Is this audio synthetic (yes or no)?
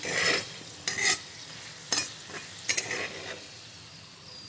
no